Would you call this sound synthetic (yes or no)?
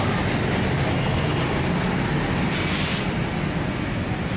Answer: no